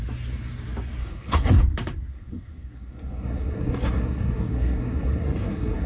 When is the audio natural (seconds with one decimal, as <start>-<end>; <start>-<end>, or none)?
0.0-1.0; 1.6-2.1